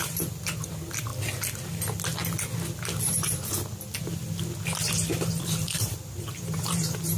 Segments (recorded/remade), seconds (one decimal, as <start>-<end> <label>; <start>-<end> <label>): 0.0-1.1 remade; 1.1-5.4 recorded; 5.4-7.2 remade